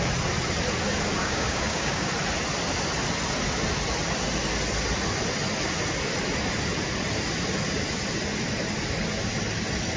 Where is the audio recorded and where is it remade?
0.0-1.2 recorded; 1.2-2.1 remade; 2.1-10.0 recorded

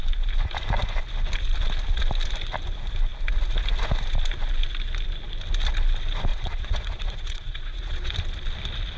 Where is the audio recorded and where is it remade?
0.0-6.3 recorded; 6.3-8.1 remade; 8.1-9.0 recorded

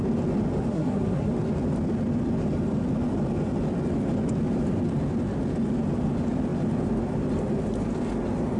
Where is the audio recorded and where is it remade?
0.0-0.7 recorded; 0.7-1.3 remade; 1.3-8.6 recorded

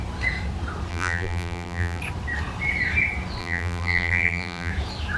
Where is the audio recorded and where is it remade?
0.0-0.9 recorded; 0.9-2.0 remade; 2.0-3.4 recorded; 3.4-4.7 remade; 4.7-5.2 recorded

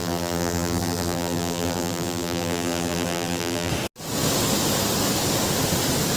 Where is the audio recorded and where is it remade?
0.0-3.7 remade; 3.7-6.2 recorded

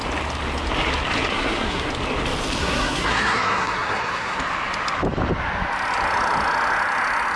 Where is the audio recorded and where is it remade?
0.0-1.3 recorded; 1.3-1.9 remade; 1.9-2.6 recorded; 2.6-4.4 remade; 4.4-7.4 recorded

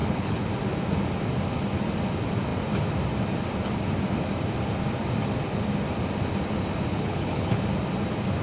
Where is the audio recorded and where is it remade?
0.0-0.5 remade; 0.5-6.9 recorded; 6.9-7.6 remade; 7.6-8.4 recorded

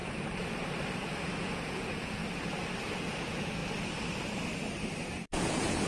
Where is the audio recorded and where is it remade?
0.0-1.4 recorded; 1.4-2.2 remade; 2.2-3.0 recorded; 3.0-3.6 remade; 3.6-5.3 recorded; 5.3-5.9 remade